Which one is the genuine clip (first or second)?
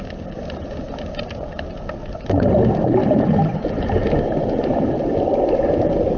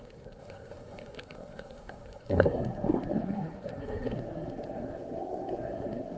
first